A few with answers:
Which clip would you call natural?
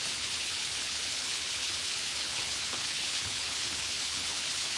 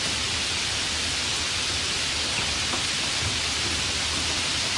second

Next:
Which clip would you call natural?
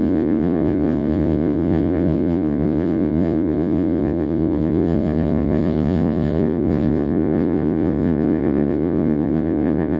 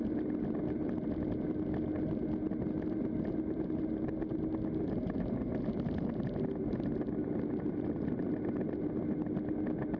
second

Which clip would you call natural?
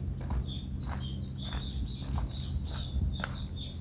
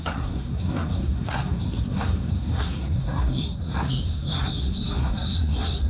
first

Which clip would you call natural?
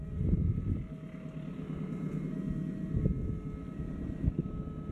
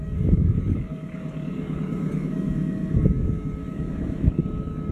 first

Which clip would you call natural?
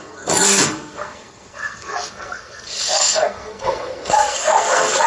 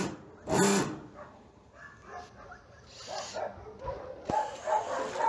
second